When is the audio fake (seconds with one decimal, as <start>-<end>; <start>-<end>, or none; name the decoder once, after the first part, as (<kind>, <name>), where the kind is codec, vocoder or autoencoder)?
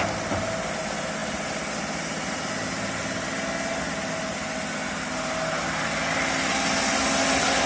none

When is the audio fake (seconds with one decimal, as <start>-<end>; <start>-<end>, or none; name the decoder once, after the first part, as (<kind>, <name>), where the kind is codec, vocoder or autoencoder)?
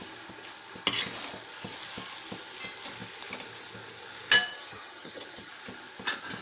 4.5-5.5 (vocoder, HiFi-GAN)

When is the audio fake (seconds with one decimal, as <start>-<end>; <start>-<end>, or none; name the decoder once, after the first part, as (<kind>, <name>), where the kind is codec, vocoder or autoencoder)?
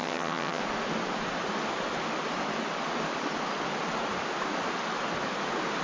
0.0-0.6 (vocoder, HiFi-GAN)